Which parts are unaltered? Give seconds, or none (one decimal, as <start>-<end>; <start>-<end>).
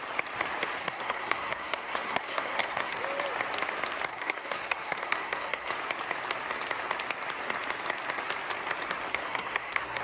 0.0-0.8; 3.0-4.1; 5.7-9.1